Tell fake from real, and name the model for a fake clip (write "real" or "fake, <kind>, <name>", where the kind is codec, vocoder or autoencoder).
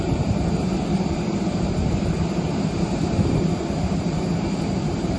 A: fake, vocoder, BigVGAN v2